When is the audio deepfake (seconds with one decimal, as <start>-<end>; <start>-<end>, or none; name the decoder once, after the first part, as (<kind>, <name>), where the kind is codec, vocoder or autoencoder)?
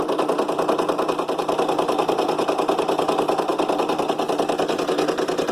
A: none